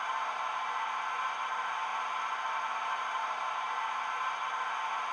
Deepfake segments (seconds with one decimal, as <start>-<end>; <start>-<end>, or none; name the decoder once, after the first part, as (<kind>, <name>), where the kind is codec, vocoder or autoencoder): none